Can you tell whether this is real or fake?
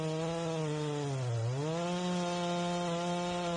real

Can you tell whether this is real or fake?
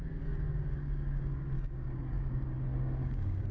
fake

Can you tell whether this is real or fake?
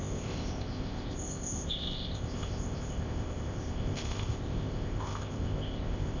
fake